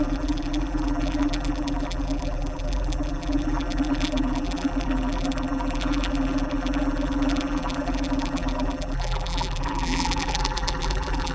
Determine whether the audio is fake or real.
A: fake